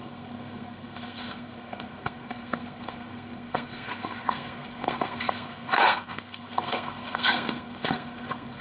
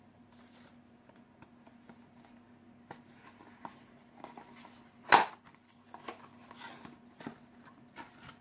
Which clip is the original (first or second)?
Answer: second